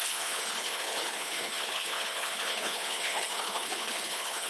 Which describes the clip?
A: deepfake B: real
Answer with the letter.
A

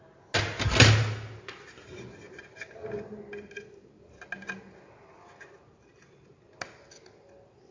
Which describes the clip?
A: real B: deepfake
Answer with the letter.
A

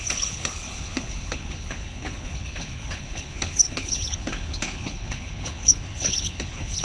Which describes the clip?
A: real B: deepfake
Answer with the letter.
B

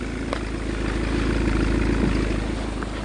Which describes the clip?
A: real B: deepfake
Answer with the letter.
A